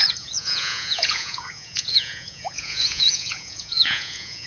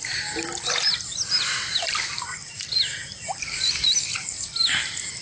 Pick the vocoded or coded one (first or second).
first